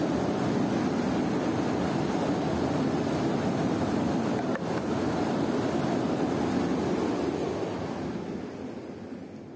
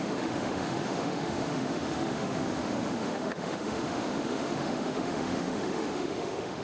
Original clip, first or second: first